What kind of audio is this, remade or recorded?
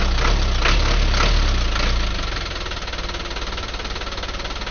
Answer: recorded